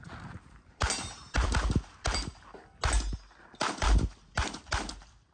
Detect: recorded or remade recorded